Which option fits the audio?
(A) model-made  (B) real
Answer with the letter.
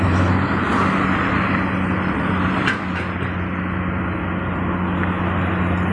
B